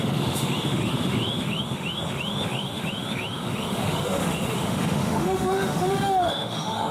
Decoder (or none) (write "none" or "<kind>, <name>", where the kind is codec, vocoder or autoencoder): autoencoder, DAC-VAE